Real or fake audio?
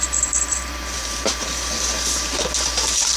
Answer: fake